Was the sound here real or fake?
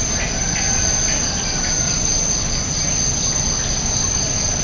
real